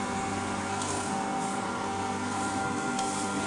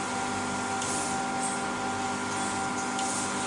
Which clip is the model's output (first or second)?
first